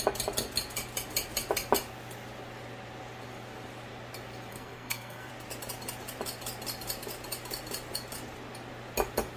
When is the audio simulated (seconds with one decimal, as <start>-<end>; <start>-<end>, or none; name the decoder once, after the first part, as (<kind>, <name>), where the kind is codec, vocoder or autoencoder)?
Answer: 4.5-5.3 (codec, SNAC)